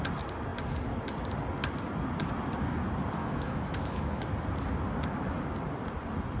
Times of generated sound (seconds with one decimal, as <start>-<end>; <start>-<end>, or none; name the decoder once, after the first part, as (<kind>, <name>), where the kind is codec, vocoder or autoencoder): 3.2-4.2 (autoencoder, DAC-VAE)